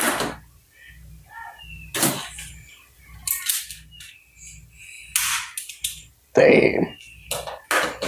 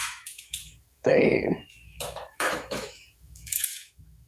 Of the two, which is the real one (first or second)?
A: first